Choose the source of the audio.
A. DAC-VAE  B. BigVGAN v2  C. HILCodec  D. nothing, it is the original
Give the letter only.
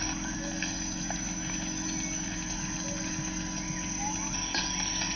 D